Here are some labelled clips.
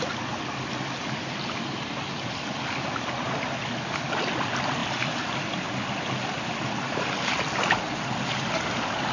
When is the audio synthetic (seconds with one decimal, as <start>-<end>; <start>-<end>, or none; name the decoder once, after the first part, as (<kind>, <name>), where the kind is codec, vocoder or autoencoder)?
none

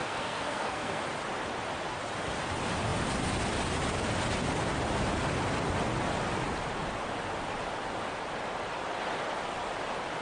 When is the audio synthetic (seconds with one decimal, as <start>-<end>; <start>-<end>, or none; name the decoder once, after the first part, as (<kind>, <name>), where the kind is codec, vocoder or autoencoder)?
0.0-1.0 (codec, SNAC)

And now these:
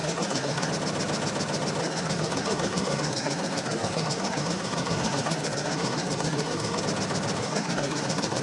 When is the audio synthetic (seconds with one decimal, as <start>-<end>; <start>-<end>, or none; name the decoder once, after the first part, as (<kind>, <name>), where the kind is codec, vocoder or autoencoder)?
0.0-0.7 (codec, SNAC); 1.8-6.8; 7.4-8.4

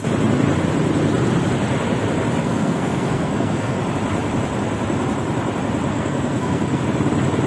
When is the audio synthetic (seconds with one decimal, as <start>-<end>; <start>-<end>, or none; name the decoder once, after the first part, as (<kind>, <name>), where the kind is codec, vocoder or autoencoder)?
2.4-3.8 (codec, SNAC); 5.9-6.8

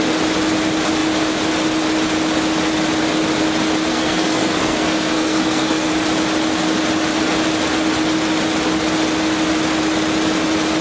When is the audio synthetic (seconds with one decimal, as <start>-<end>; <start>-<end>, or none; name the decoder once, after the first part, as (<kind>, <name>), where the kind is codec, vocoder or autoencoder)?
3.9-5.9 (codec, SNAC)

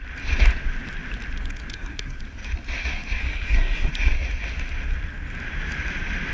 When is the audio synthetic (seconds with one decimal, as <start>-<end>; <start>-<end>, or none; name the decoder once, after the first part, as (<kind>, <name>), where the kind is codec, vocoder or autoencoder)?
1.7-2.2 (codec, SNAC); 3.2-3.9

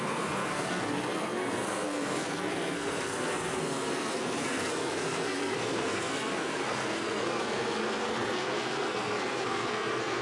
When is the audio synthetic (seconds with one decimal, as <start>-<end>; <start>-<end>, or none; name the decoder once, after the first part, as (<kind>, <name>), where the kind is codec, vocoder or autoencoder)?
0.0-10.2 (codec, SNAC)